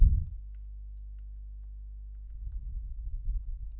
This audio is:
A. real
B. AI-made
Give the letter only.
A